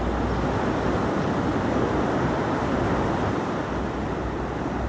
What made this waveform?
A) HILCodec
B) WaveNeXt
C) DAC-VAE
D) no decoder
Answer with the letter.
D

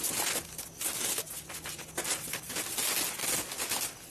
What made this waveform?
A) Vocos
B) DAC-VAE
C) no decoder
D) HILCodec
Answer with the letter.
C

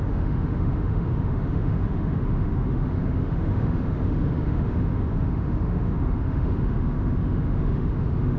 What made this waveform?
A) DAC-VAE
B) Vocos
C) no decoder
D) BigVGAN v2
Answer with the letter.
A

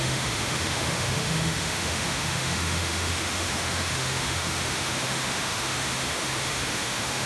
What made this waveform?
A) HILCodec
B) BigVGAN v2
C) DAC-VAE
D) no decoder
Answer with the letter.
C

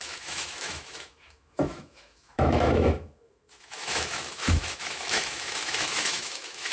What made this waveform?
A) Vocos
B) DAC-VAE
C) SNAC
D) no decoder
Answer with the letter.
B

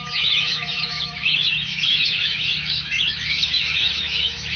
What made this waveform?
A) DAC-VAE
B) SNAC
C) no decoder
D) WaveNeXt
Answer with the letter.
A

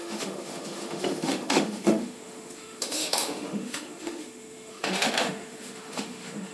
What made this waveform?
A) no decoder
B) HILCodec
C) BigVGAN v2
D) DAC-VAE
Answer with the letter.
D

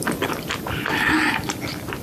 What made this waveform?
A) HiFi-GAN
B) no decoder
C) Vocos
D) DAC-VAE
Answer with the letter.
B